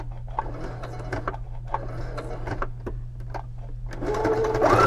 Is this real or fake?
real